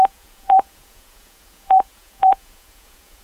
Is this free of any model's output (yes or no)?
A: no